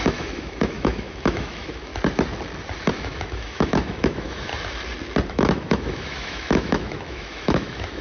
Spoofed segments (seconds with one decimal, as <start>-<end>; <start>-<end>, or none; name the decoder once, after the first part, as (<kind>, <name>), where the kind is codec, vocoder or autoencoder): 0.0-1.9 (autoencoder, DAC-VAE); 2.9-4.5; 5.3-8.0